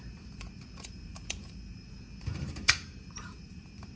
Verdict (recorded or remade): remade